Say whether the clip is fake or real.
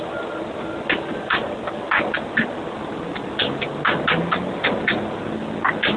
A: real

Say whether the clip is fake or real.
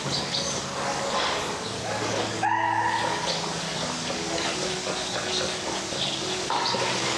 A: fake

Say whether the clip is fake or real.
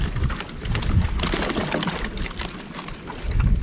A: real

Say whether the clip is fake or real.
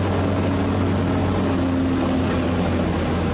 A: real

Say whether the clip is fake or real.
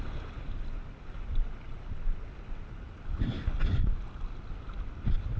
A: real